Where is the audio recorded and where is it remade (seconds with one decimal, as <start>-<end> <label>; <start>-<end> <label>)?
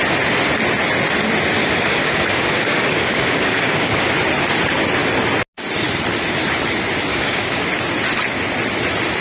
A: 0.0-1.6 recorded; 1.6-4.1 remade; 4.1-7.1 recorded; 7.1-7.7 remade; 7.7-9.2 recorded